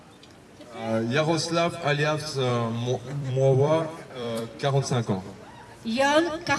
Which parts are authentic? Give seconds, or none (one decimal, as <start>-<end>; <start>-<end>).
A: 0.0-2.5; 5.8-6.6